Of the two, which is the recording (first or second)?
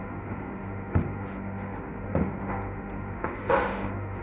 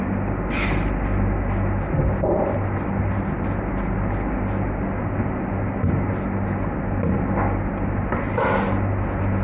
second